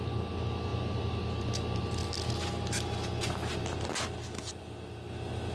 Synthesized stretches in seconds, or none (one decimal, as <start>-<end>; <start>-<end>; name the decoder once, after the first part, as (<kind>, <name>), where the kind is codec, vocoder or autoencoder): none

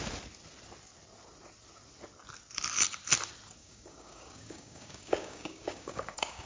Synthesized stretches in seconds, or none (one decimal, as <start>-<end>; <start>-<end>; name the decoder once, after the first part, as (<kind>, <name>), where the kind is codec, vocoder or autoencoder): 3.6-6.5 (codec, DAC)

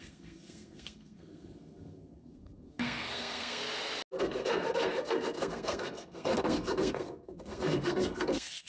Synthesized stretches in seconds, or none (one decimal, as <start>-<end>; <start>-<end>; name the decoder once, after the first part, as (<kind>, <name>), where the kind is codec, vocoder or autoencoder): 0.0-3.6 (codec, SNAC); 4.2-8.7

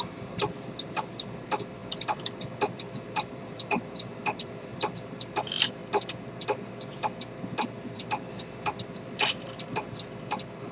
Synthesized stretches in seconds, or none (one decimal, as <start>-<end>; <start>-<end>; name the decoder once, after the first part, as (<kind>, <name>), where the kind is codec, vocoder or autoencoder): 0.0-1.8 (vocoder, BigVGAN v2); 2.6-5.8; 7.8-10.7

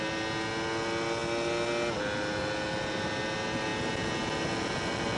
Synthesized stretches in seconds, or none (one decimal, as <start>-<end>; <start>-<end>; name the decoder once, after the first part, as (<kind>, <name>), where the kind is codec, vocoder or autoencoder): none

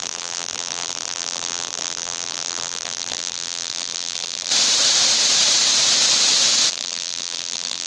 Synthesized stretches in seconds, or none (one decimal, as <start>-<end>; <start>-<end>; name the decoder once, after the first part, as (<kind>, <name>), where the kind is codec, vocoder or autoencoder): 0.0-4.5 (vocoder, BigVGAN v2); 6.7-7.9

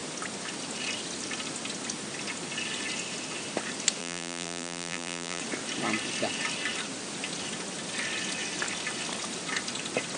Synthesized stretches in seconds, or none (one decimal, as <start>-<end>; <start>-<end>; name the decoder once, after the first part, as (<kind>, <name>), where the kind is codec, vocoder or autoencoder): 4.0-5.4 (vocoder, BigVGAN v2)